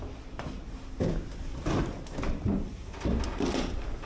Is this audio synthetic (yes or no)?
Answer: no